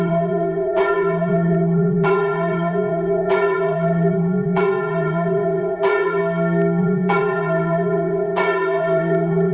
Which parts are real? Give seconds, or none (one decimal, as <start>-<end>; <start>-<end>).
6.2-6.8